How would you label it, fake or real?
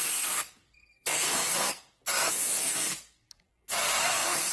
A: fake